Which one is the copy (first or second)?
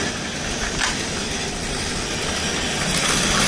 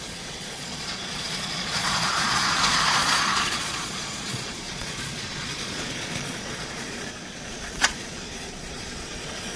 second